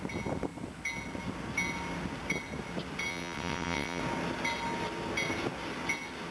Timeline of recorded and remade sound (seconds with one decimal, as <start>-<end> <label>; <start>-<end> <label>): 0.0-3.1 recorded; 3.1-4.0 remade; 4.0-6.3 recorded